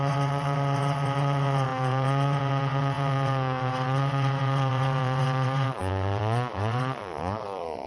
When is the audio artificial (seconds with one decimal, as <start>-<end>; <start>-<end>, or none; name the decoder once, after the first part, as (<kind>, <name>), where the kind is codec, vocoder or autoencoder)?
0.0-7.9 (vocoder, WaveNeXt)